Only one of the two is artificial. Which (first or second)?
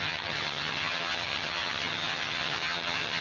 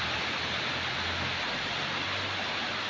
first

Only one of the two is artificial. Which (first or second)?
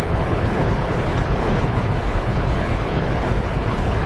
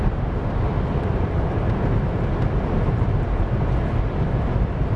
first